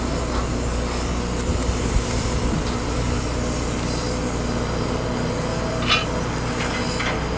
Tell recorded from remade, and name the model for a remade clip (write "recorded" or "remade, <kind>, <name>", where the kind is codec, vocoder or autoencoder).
recorded